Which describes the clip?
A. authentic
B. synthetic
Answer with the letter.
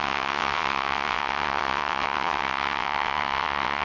B